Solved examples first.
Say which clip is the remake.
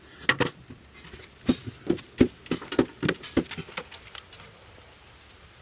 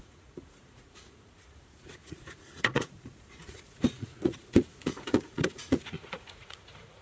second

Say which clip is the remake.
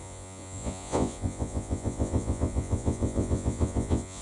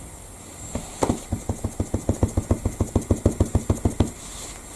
first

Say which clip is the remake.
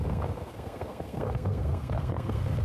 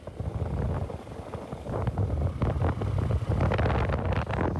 first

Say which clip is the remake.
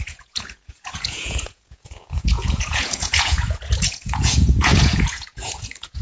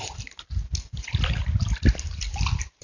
first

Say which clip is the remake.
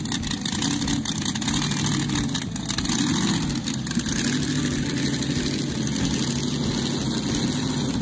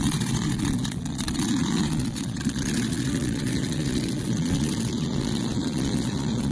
second